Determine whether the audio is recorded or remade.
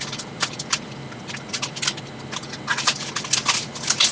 recorded